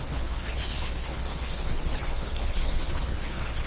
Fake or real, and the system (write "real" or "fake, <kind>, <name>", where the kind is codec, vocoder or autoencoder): fake, codec, HILCodec